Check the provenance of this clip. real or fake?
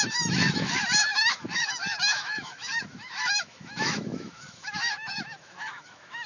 fake